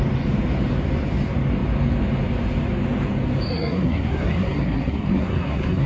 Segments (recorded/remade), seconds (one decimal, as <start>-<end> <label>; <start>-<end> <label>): 0.0-3.5 recorded; 3.5-5.9 remade